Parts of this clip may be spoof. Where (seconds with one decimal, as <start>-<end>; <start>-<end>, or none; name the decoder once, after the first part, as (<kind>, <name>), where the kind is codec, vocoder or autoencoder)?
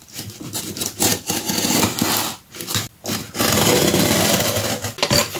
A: none